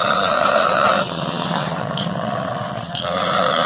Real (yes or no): no